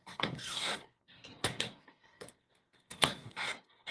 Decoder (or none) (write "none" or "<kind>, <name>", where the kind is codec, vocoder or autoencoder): codec, SNAC